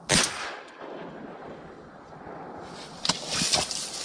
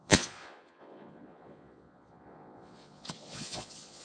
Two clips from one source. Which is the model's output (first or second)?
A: second